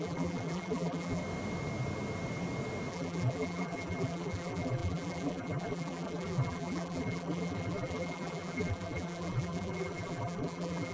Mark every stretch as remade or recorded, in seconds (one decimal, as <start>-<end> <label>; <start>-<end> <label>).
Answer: 0.0-1.2 remade; 1.2-2.9 recorded; 2.9-10.9 remade